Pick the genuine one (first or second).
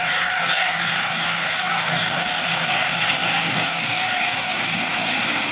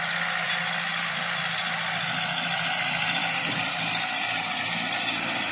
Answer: second